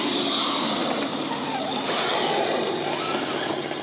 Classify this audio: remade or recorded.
recorded